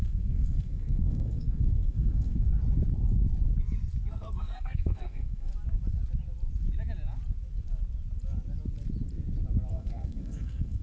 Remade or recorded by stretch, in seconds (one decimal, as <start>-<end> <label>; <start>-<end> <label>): 0.0-2.5 remade; 2.5-4.1 recorded; 4.1-5.5 remade; 5.5-9.7 recorded; 9.7-10.8 remade